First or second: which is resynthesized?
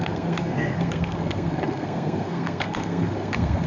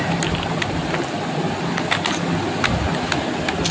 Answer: first